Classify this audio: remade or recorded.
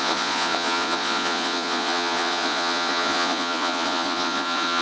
remade